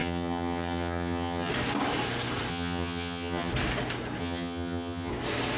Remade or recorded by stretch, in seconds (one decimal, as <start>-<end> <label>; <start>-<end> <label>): 0.0-1.5 remade; 1.5-2.5 recorded; 2.5-3.5 remade; 3.5-4.2 recorded; 4.2-5.1 remade; 5.1-5.6 recorded